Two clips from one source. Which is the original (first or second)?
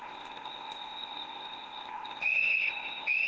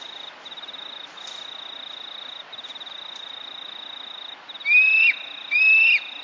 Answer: second